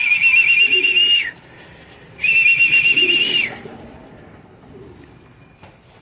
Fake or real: fake